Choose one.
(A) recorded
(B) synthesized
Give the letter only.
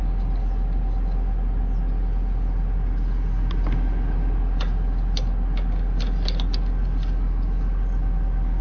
A